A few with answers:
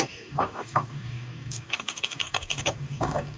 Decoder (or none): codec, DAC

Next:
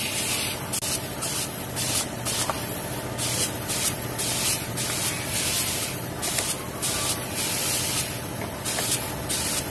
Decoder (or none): none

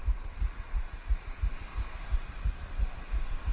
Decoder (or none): none